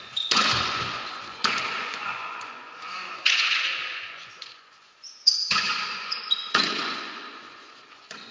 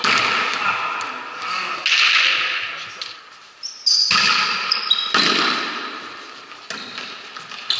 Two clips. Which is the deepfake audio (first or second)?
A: first